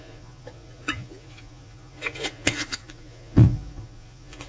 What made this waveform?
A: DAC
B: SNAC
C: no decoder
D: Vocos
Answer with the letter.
D